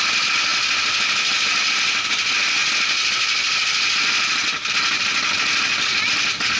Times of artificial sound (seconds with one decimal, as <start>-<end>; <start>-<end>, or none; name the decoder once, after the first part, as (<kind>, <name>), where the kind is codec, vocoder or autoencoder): none